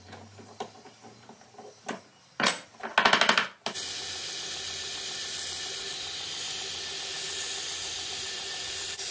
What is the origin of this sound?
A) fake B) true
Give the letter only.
B